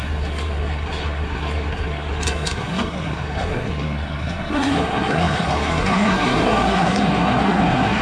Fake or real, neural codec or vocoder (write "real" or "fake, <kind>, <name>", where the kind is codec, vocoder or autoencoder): fake, codec, SNAC